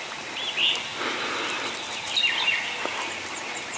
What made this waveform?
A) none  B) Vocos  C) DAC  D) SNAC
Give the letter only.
A